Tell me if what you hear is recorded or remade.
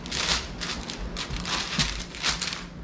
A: recorded